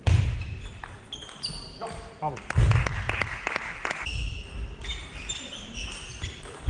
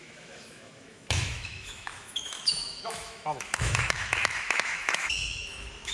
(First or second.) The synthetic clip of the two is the second